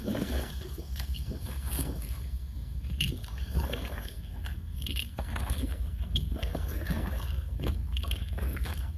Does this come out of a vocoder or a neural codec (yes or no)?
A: yes